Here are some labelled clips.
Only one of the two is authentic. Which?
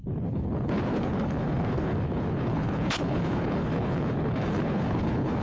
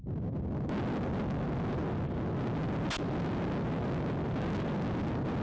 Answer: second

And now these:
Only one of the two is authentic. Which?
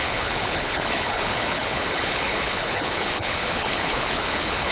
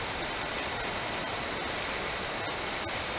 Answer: second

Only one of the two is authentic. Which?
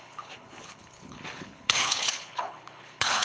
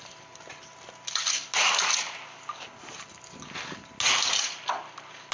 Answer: second